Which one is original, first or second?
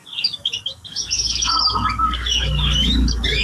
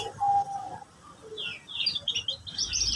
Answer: second